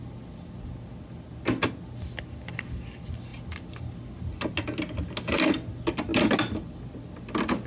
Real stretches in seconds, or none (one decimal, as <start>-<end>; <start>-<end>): 0.0-7.7